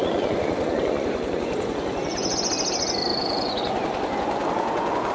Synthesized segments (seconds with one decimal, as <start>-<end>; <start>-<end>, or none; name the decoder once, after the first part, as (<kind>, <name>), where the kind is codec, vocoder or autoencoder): 0.0-2.5 (vocoder, Vocos); 3.1-5.1